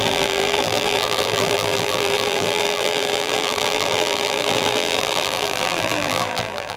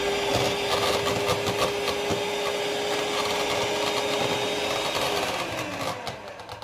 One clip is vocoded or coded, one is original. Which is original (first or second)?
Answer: second